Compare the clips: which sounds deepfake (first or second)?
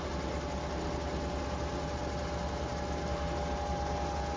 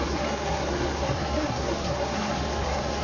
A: second